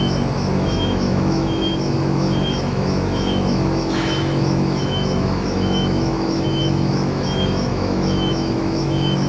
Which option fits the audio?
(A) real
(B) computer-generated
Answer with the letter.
B